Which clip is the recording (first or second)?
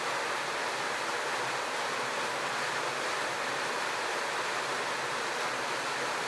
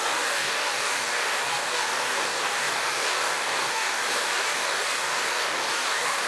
first